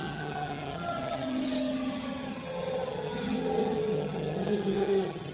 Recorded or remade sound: remade